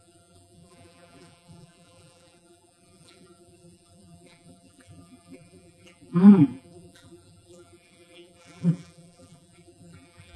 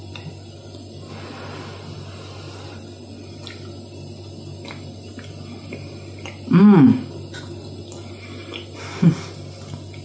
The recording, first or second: second